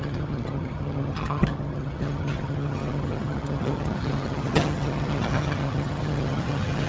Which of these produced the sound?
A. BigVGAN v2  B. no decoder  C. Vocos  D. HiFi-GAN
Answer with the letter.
D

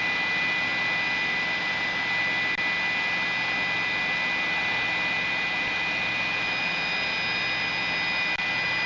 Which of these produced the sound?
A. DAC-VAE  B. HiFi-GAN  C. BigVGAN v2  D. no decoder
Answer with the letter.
D